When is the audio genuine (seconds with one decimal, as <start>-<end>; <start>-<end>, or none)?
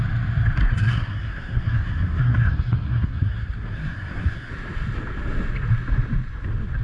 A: 0.0-0.6; 4.5-6.8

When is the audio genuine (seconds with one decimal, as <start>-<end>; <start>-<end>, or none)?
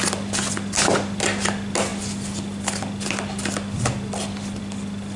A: 0.0-5.2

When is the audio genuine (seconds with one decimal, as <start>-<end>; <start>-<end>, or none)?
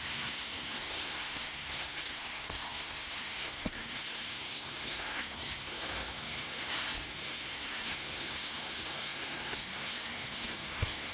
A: none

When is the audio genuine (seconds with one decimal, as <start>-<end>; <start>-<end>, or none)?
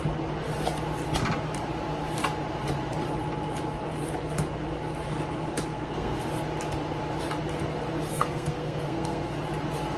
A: 0.0-5.7; 6.3-8.1; 9.4-10.0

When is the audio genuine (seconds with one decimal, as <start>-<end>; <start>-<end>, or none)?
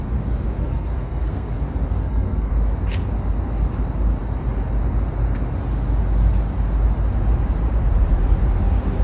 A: 0.0-0.6; 1.5-2.0; 2.5-9.0